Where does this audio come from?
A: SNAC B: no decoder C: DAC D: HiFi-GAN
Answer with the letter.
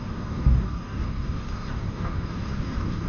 C